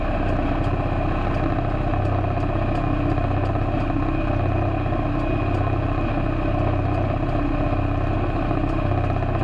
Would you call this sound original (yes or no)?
yes